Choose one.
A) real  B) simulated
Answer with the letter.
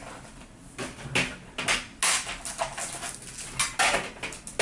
A